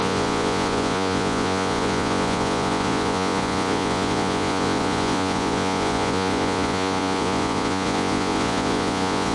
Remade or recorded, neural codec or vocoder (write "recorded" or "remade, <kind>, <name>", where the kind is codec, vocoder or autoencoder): remade, vocoder, Vocos